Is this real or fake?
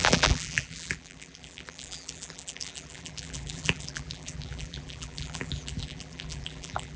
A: fake